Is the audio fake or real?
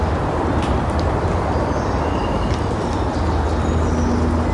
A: real